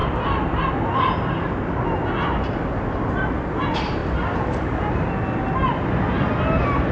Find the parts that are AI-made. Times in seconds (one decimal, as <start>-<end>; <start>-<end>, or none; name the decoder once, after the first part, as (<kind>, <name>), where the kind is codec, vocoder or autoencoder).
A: none